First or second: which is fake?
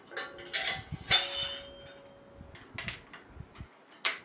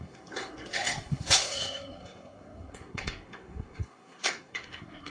second